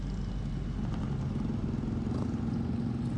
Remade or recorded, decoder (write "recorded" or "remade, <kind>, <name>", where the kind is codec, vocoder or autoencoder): recorded